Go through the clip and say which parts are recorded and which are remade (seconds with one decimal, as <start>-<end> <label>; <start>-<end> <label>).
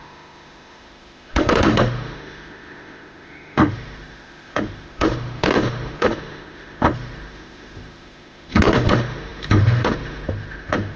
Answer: 0.0-11.0 remade